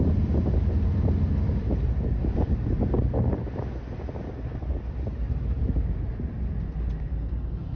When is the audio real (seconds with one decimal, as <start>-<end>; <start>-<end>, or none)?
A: 0.0-7.8